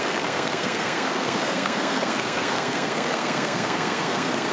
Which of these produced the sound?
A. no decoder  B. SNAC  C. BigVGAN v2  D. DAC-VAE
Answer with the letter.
B